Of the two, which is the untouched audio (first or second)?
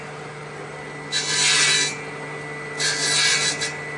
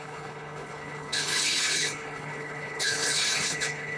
first